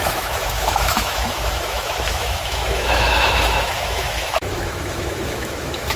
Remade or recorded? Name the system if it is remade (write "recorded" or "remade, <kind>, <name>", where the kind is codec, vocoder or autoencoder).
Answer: remade, autoencoder, DAC-VAE